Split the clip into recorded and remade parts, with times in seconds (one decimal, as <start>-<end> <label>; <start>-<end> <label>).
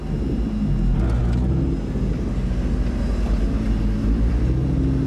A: 0.0-5.1 recorded